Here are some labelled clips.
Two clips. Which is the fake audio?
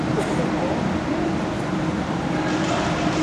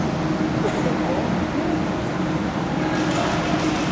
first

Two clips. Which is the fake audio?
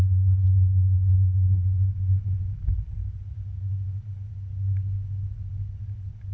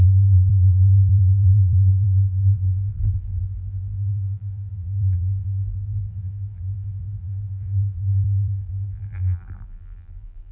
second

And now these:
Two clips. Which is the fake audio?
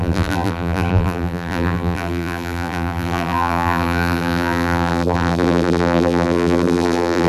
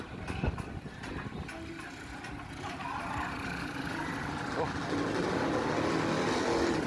first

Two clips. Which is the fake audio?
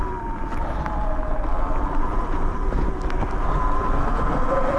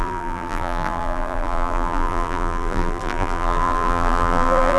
second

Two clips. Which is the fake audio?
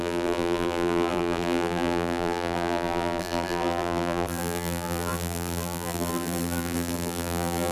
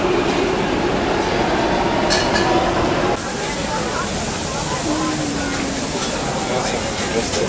first